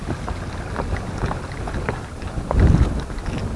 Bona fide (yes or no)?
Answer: yes